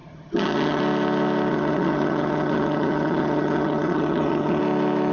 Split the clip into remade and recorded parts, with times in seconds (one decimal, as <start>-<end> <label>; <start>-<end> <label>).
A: 0.0-0.8 remade; 0.8-1.5 recorded; 1.5-4.6 remade; 4.6-5.1 recorded